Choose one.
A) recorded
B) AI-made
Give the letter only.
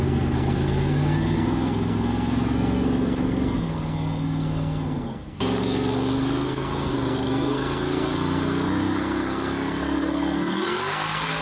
B